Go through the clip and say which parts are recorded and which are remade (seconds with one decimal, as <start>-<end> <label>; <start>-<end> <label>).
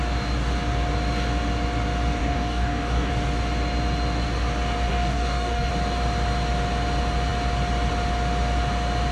0.0-2.2 recorded; 2.2-3.1 remade; 3.1-4.9 recorded; 4.9-5.7 remade; 5.7-9.1 recorded